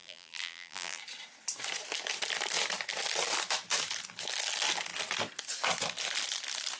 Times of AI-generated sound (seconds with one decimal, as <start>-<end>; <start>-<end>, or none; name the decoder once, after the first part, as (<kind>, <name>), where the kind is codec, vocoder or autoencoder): 0.0-1.0 (vocoder, BigVGAN v2)